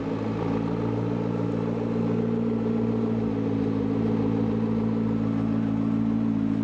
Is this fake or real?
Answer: real